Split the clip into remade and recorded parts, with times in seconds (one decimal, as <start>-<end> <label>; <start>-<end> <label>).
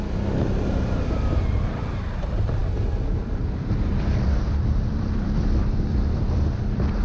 0.0-7.0 remade